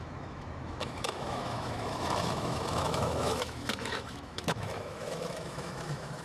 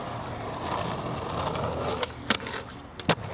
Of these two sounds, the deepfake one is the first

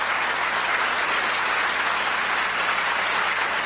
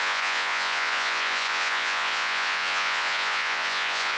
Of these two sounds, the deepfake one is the second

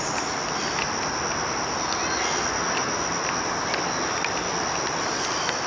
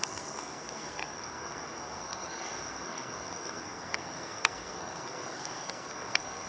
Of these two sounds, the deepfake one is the second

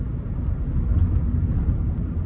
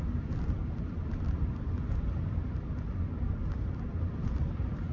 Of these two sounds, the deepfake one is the second